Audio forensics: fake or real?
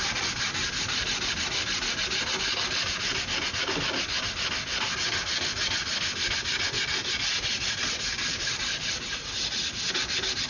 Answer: real